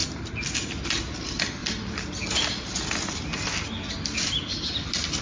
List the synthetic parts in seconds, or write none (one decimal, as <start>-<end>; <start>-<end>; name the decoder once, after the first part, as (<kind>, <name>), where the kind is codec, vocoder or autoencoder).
none

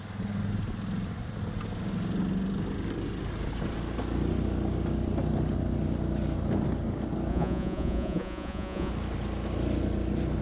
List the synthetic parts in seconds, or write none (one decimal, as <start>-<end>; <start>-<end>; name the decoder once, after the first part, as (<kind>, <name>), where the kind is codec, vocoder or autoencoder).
7.3-8.9 (vocoder, Vocos)

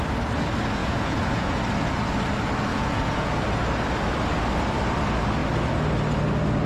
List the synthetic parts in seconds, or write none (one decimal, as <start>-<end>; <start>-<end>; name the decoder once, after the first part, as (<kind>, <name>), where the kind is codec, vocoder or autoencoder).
0.8-1.6 (vocoder, Vocos); 2.7-3.3

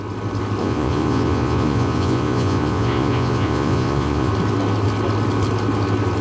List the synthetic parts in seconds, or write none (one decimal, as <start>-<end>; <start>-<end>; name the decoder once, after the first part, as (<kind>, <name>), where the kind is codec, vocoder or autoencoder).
0.6-4.3 (vocoder, Vocos)